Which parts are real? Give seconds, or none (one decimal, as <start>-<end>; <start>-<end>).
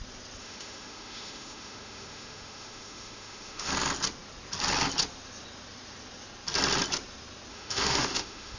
0.0-0.4; 3.7-7.5